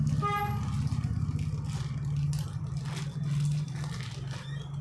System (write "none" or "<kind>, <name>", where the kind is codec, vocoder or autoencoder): none